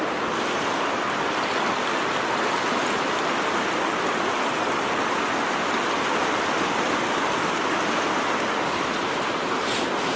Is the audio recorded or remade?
recorded